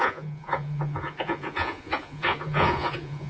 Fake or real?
fake